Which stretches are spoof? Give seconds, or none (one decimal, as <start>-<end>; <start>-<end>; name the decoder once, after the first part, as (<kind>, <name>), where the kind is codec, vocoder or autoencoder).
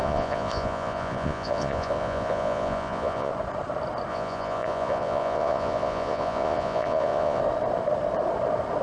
0.0-3.3 (vocoder, Vocos); 4.1-7.4